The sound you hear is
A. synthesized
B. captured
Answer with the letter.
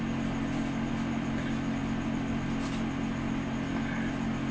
B